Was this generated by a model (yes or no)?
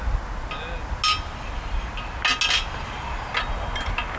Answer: no